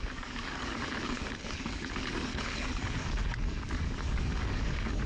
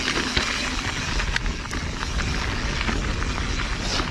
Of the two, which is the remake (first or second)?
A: first